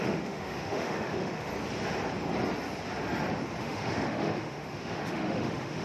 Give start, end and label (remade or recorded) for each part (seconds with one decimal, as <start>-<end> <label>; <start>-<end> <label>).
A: 0.0-1.5 remade; 1.5-3.6 recorded; 3.6-5.8 remade